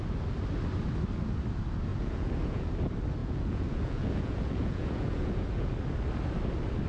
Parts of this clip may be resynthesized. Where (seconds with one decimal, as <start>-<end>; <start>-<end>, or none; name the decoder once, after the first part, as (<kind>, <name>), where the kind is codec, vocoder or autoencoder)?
1.9-2.7 (vocoder, Vocos); 3.2-5.7

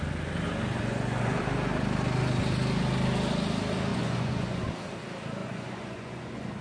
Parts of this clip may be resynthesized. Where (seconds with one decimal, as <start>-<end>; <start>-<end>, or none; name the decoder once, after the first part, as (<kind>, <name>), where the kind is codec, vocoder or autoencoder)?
0.8-1.4 (vocoder, Vocos); 3.9-4.6; 5.4-6.6

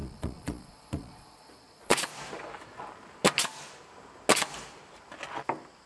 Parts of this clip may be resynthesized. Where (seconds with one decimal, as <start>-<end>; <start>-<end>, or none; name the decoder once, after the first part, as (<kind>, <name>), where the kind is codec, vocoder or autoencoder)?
0.0-2.1 (vocoder, Vocos)

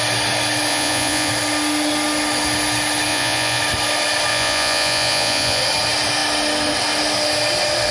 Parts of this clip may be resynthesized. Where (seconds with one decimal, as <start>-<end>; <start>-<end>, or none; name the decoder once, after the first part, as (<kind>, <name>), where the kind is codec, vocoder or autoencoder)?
0.7-1.3 (vocoder, Vocos); 3.1-3.6; 4.3-5.6

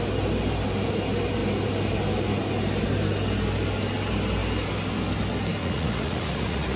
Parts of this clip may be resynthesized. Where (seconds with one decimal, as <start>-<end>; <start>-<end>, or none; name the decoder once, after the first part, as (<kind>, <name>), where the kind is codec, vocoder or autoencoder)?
5.6-6.8 (vocoder, Vocos)

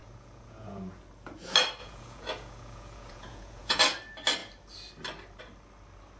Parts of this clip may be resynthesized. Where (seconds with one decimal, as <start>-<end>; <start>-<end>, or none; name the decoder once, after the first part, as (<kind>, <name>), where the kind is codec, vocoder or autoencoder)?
0.0-1.0 (vocoder, Vocos); 1.8-3.8

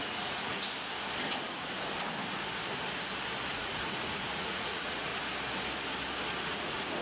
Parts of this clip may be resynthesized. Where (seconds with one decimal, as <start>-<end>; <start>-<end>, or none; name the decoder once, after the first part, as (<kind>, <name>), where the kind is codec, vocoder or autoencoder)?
0.0-0.5 (vocoder, Vocos); 3.5-5.1; 6.5-7.0

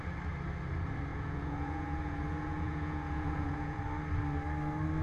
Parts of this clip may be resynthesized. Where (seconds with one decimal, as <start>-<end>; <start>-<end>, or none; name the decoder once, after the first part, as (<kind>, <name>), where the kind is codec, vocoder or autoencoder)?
1.1-3.8 (vocoder, Vocos)